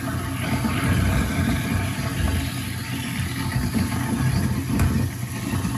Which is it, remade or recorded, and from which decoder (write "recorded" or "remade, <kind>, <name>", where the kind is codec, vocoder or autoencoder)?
recorded